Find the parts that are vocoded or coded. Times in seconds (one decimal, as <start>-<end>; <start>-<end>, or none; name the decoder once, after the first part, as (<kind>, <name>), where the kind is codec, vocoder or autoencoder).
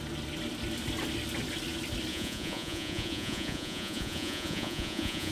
2.1-5.3 (vocoder, Vocos)